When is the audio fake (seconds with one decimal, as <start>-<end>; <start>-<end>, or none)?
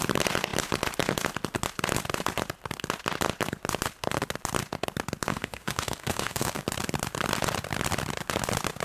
5.3-6.6